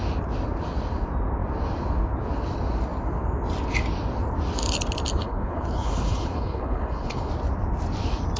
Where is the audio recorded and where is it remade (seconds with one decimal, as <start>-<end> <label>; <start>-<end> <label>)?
0.0-5.2 recorded; 5.2-7.3 remade; 7.3-8.4 recorded